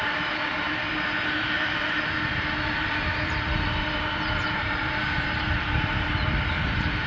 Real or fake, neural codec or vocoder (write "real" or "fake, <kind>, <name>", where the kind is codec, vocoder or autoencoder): fake, vocoder, BigVGAN v2